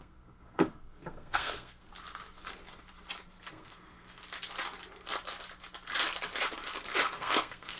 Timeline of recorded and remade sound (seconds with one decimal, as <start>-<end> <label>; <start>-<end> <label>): 0.0-1.9 remade; 1.9-3.5 recorded; 3.5-4.2 remade; 4.2-7.1 recorded; 7.1-7.8 remade